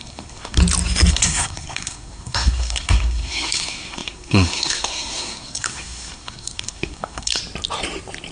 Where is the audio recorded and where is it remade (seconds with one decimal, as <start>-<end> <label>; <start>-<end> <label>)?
0.0-0.6 remade; 0.6-1.1 recorded; 1.1-7.4 remade; 7.4-8.3 recorded